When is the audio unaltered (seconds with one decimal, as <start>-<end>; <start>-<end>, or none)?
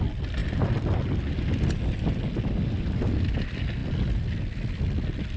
0.0-5.4